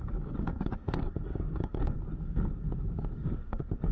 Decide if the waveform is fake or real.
fake